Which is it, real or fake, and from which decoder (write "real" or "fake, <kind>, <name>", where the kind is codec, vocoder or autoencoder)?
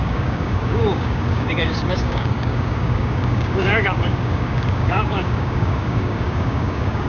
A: fake, codec, DAC